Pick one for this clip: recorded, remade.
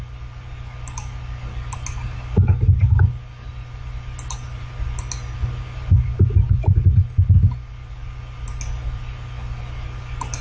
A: recorded